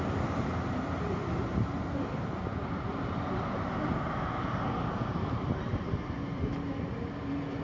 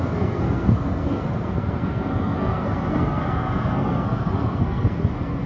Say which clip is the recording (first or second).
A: first